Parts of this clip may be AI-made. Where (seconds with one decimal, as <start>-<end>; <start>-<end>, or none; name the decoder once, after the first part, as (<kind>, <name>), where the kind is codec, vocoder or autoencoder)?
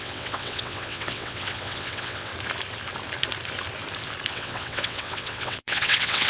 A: 0.0-2.3 (vocoder, WaveNeXt); 4.3-6.3